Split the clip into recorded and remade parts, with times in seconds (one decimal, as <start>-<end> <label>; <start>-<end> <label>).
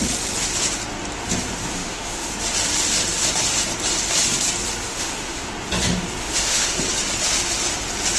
0.0-1.7 recorded; 1.7-2.3 remade; 2.3-4.9 recorded; 4.9-5.5 remade; 5.5-6.2 recorded; 6.2-6.7 remade; 6.7-8.2 recorded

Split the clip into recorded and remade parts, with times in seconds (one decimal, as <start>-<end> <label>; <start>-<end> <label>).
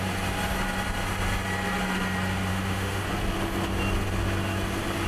0.0-2.5 recorded; 2.5-3.0 remade; 3.0-5.1 recorded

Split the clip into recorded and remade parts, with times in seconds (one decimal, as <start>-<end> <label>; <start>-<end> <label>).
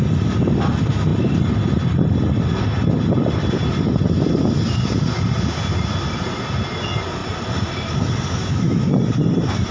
0.0-8.4 recorded; 8.4-8.9 remade; 8.9-9.7 recorded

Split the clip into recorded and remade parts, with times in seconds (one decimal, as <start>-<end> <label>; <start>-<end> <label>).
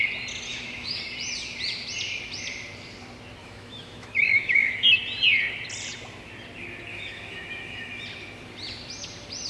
0.0-0.5 recorded; 0.5-1.0 remade; 1.0-3.4 recorded; 3.4-4.9 remade; 4.9-6.9 recorded; 6.9-7.9 remade; 7.9-9.5 recorded